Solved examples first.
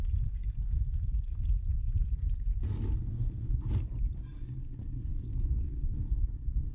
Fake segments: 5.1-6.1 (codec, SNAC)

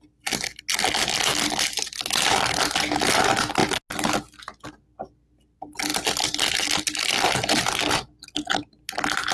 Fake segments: none

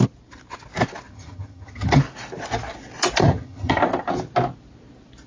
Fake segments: 1.1-2.0 (vocoder, HiFi-GAN); 3.2-3.8

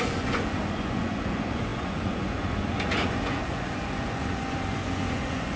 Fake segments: 0.0-5.6 (vocoder, Vocos)

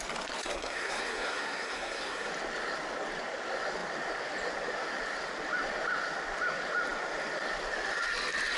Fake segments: 0.4-2.3 (codec, SNAC)

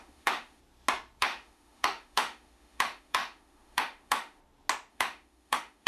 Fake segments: 0.0-0.6 (autoencoder, DAC-VAE); 1.2-4.4; 4.9-5.9